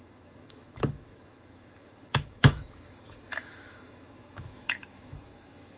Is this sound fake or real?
fake